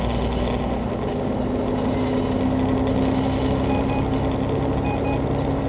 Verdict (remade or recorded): recorded